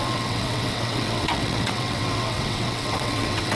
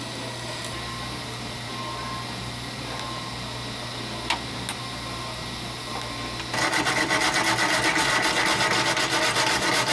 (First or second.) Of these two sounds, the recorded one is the second